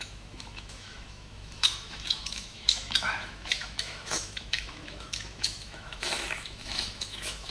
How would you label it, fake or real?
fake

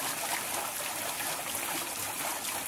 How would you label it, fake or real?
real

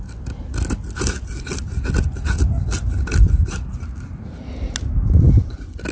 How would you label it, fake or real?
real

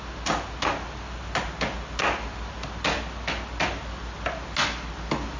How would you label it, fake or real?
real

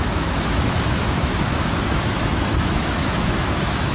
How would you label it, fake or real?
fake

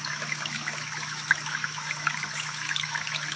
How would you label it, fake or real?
fake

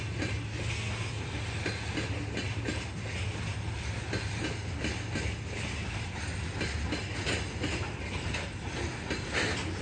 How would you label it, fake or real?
real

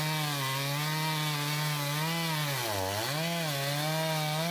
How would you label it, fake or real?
real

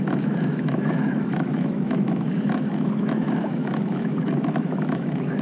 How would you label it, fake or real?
fake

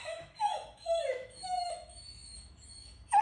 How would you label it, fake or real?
fake